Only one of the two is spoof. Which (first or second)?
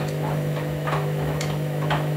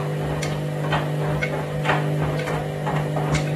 first